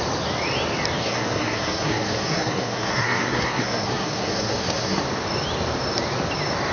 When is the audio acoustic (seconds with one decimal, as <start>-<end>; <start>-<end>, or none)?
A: 0.0-1.0; 5.0-6.7